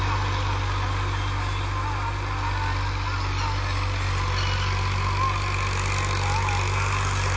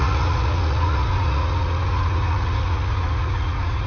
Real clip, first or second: first